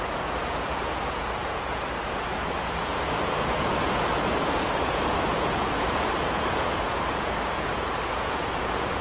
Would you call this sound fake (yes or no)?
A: yes